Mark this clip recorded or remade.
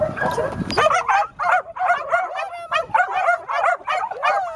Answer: recorded